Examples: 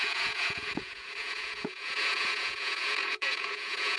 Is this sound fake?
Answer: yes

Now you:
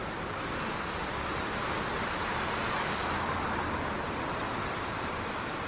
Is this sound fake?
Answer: no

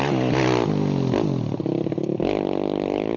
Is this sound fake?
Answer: no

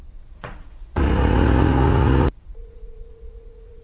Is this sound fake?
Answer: yes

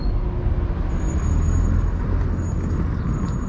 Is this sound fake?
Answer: no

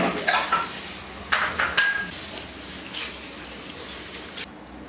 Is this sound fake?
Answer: no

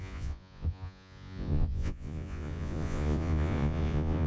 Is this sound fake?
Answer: yes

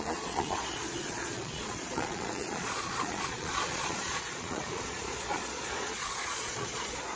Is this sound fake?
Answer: yes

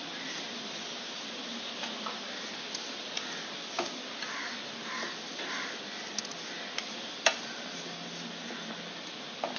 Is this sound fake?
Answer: no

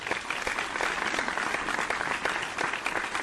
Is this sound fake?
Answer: no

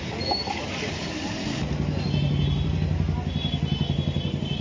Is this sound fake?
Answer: no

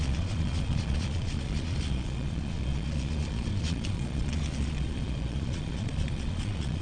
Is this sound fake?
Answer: yes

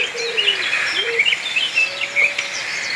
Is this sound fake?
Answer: no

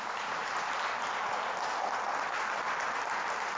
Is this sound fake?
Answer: no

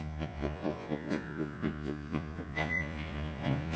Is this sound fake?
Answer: yes